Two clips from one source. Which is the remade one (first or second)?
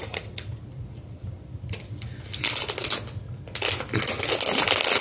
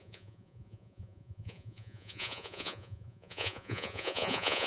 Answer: second